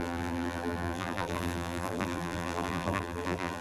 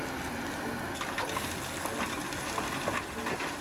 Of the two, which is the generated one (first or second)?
first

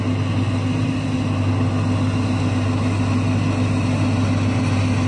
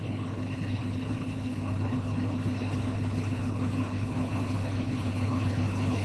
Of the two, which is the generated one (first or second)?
second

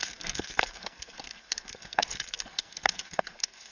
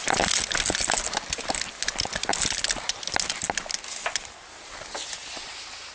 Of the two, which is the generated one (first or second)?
first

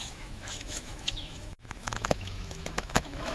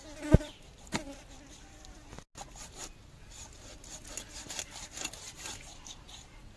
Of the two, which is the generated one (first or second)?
first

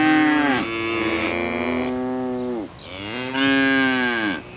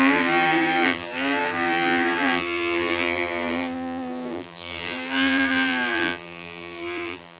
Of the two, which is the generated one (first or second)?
second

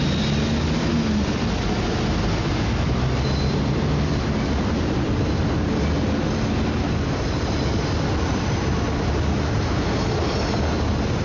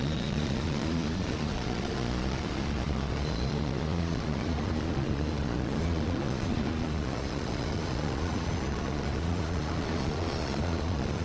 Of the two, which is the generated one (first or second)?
second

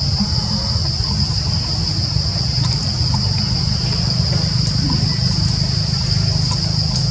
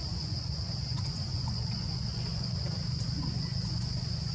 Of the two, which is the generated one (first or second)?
second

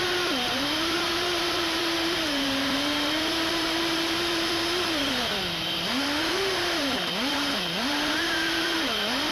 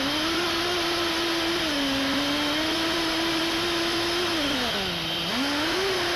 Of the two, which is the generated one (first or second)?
first